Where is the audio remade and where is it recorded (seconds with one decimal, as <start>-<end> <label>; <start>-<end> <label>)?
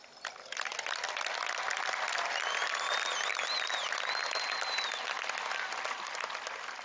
0.0-6.8 recorded